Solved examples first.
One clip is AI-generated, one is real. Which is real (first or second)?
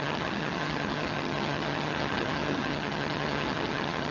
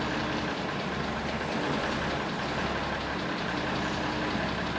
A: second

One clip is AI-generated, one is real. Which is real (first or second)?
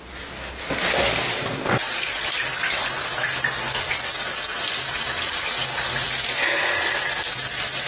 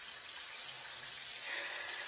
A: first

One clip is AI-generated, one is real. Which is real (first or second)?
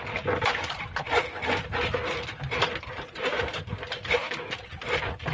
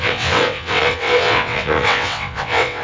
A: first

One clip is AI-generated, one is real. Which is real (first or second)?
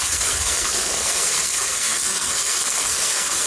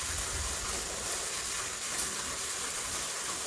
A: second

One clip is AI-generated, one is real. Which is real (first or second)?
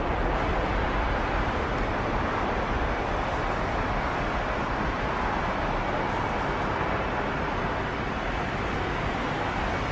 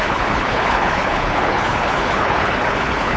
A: first